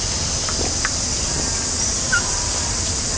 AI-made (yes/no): no